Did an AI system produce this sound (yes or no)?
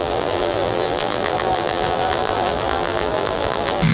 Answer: yes